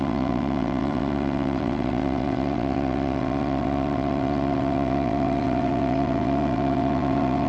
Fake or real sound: fake